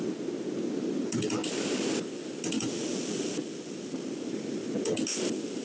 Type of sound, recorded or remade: recorded